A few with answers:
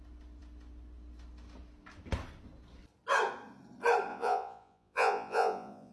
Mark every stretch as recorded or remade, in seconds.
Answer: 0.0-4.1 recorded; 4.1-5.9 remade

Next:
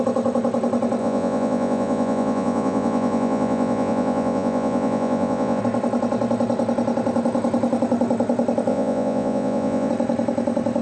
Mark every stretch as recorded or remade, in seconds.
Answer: 0.0-1.0 recorded; 1.0-5.6 remade; 5.6-8.7 recorded; 8.7-9.9 remade; 9.9-10.8 recorded

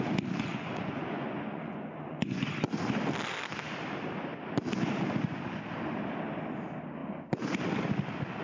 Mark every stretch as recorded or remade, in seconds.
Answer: 0.0-0.5 recorded; 0.5-2.4 remade; 2.4-8.4 recorded

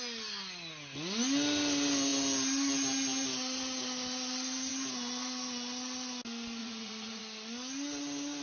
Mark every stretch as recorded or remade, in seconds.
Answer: 0.0-6.6 recorded; 6.6-7.2 remade; 7.2-8.4 recorded